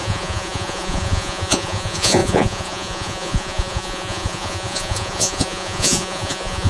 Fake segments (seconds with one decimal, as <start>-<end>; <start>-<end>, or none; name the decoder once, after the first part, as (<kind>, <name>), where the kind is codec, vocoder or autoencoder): 0.0-6.7 (vocoder, Vocos)